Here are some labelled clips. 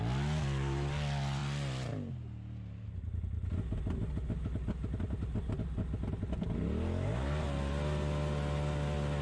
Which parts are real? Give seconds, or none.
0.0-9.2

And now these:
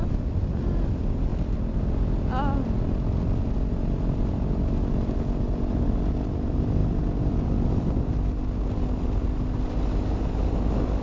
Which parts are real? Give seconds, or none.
0.0-11.0

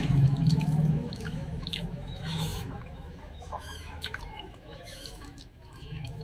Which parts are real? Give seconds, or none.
none

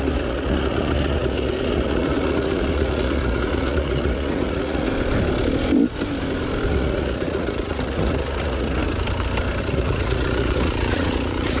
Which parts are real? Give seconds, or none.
4.9-6.7; 8.8-9.6

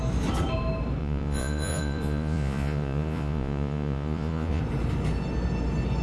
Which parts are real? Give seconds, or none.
0.0-1.0; 4.6-6.0